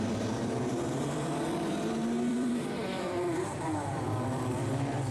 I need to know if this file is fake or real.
fake